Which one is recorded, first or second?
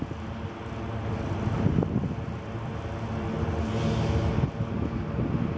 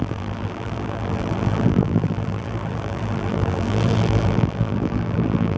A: first